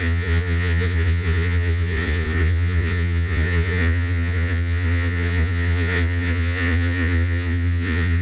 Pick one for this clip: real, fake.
fake